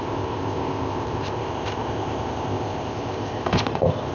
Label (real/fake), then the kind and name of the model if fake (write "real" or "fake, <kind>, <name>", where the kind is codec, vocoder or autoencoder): fake, codec, ZipCodec